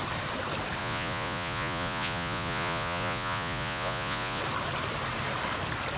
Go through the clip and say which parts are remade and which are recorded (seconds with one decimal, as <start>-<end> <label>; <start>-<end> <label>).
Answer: 0.0-0.8 recorded; 0.8-4.4 remade; 4.4-6.0 recorded